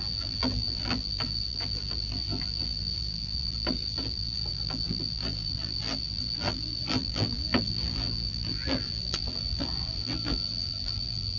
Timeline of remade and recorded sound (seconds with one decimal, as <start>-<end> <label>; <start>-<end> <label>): 0.0-11.4 remade